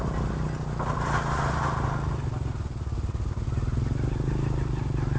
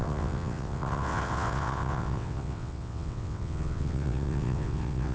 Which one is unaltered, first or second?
first